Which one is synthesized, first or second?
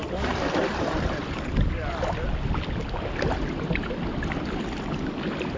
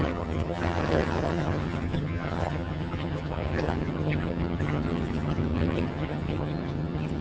second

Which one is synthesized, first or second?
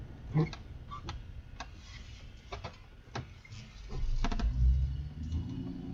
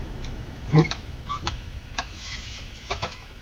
second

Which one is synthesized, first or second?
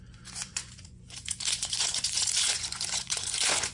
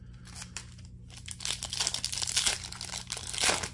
first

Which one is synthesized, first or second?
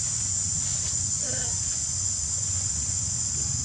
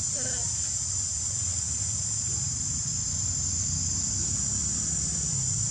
first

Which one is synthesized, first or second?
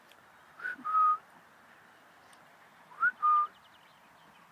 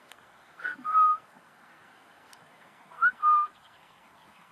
second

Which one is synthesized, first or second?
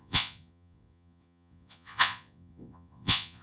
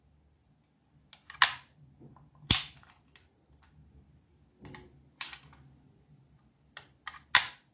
first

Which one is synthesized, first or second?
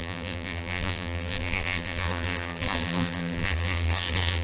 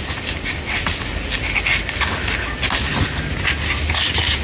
first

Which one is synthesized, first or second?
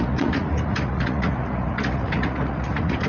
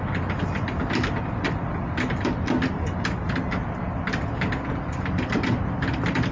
first